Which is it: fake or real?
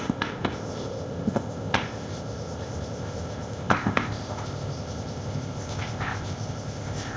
fake